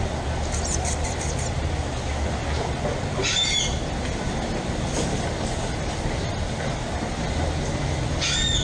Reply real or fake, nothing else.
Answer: real